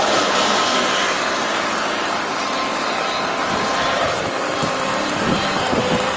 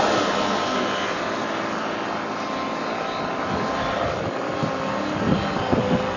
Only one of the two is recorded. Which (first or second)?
second